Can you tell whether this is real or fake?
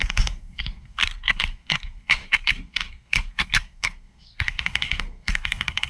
fake